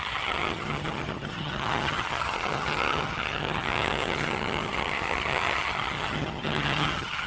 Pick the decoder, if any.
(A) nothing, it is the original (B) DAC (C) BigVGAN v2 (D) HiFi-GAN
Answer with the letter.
D